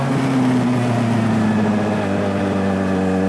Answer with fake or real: real